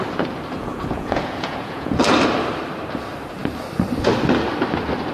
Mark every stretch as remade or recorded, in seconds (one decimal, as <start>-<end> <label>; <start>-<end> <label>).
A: 0.0-0.6 recorded; 0.6-2.0 remade; 2.0-5.1 recorded